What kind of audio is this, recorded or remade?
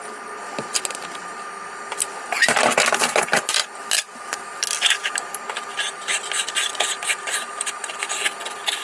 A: recorded